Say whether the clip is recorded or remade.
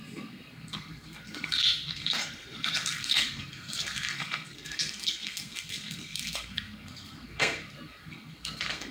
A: remade